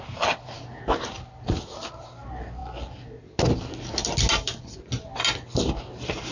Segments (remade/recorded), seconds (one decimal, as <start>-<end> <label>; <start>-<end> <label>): 0.0-6.3 recorded